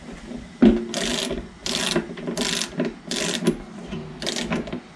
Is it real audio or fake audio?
real